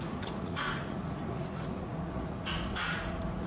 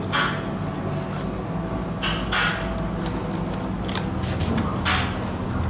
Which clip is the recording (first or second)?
second